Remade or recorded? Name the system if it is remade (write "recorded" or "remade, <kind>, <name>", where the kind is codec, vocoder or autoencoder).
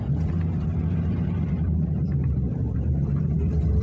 remade, vocoder, BigVGAN v2